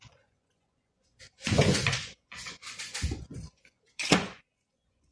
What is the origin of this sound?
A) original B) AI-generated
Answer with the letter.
B